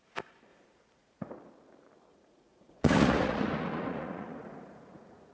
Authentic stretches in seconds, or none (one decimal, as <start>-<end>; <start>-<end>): 0.0-0.5; 1.3-2.1